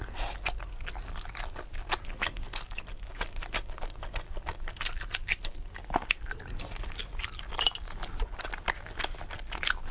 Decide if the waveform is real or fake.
real